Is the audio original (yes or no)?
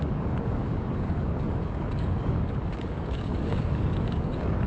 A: no